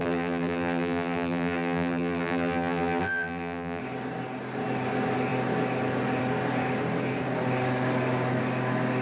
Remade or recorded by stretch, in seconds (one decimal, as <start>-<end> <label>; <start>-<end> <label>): 0.0-3.8 remade; 3.8-9.0 recorded